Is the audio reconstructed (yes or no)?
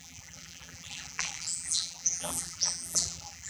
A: yes